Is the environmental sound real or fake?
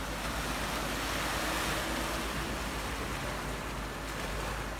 real